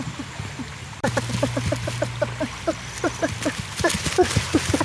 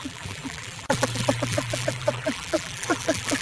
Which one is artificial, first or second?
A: second